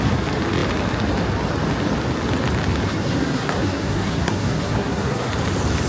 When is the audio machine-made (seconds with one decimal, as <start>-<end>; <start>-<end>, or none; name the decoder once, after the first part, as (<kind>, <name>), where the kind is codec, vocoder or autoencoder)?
2.9-5.3 (codec, SNAC)